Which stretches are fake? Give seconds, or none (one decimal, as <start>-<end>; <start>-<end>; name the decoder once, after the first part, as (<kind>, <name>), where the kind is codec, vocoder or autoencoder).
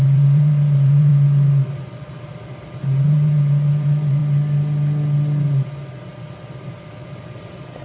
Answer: 0.0-1.1 (vocoder, BigVGAN v2); 1.7-4.2; 6.6-7.8